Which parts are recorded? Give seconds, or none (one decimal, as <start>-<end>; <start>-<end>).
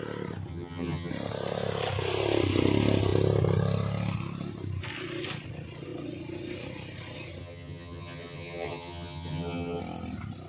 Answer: 0.0-0.5; 1.1-7.4; 9.8-10.5